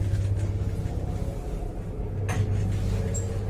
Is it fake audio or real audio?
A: real